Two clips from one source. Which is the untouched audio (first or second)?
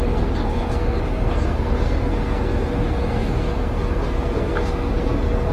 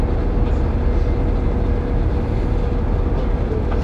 second